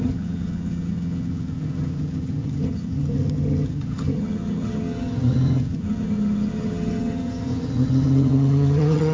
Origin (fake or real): fake